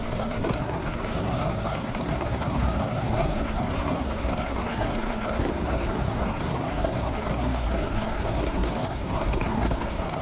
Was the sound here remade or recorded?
remade